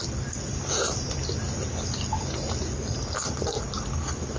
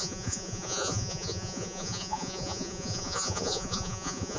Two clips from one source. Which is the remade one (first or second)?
second